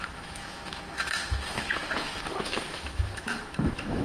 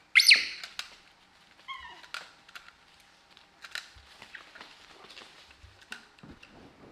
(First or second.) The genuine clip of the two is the second